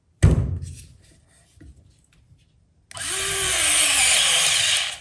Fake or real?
real